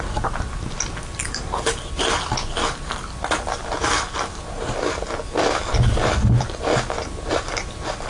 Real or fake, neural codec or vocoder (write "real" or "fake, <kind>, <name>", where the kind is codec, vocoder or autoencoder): real